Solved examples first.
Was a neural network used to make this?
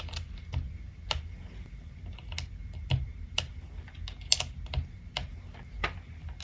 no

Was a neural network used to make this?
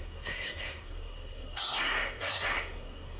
yes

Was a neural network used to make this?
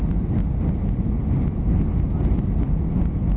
no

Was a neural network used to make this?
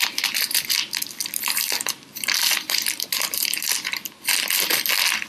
no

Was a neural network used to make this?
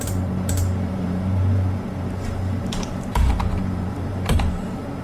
yes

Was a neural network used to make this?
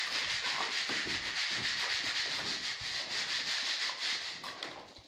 no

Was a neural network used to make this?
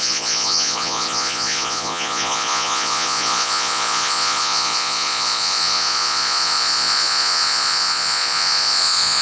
yes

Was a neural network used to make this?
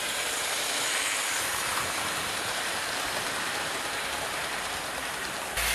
no